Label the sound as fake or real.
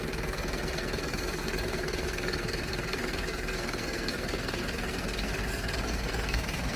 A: fake